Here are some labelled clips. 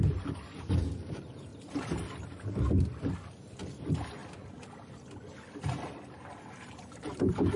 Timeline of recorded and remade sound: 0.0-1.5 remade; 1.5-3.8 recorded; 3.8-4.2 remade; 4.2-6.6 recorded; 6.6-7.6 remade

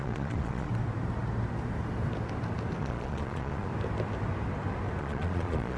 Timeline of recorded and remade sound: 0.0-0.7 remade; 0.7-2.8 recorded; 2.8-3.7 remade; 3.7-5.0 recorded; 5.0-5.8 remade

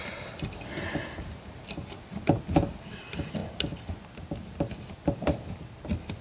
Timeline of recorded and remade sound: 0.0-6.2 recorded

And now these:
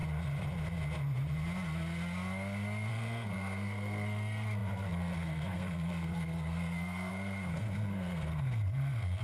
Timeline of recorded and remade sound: 0.0-2.9 recorded; 2.9-9.2 remade